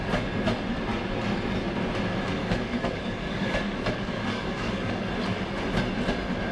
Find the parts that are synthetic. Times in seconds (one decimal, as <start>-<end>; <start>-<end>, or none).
2.4-5.1